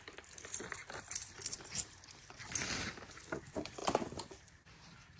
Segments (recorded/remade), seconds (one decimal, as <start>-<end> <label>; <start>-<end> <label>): 0.0-0.8 recorded; 0.8-3.1 remade; 3.1-5.2 recorded